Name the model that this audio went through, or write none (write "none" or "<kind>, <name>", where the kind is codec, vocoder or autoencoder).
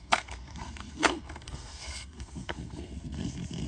codec, SNAC